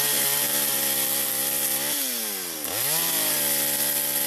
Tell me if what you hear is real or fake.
real